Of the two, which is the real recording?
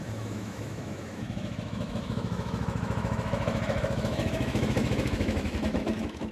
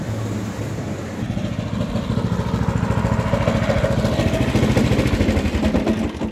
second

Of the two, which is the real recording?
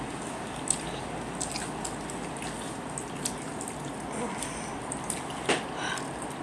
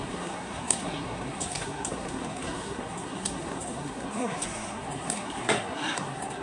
first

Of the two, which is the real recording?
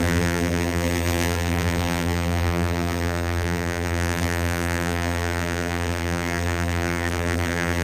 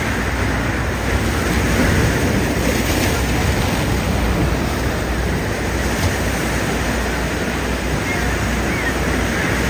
second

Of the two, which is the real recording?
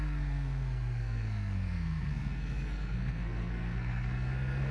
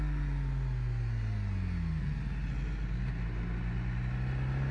second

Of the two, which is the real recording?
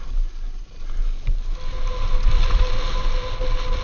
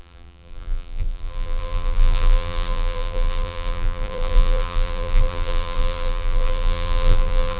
first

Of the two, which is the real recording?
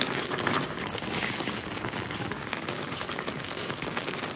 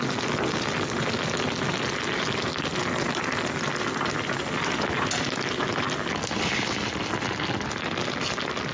second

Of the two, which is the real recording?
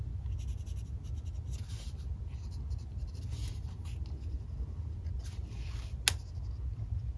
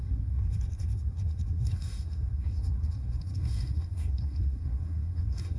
first